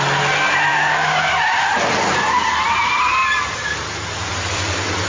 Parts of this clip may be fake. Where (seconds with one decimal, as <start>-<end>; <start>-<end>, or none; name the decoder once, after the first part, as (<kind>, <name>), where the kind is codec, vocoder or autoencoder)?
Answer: 0.7-1.3 (codec, DAC)